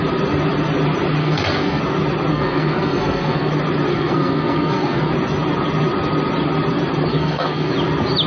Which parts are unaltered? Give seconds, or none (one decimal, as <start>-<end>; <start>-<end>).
0.0-1.2; 1.8-2.3; 3.5-3.9; 5.1-7.1; 7.7-8.3